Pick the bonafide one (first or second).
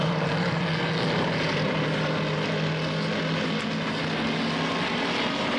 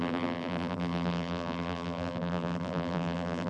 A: first